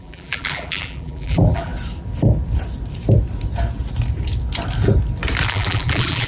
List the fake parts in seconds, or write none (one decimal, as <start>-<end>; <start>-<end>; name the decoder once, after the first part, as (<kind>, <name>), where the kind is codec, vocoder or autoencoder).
0.0-1.7 (vocoder, BigVGAN v2); 5.5-6.3